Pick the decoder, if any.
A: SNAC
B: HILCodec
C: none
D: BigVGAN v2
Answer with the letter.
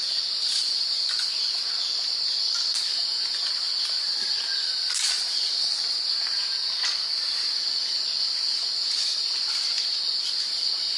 C